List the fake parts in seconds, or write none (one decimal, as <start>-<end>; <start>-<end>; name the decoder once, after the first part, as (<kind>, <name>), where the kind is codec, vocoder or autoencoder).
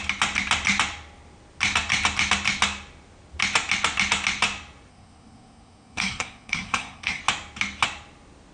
4.9-7.2 (codec, SNAC)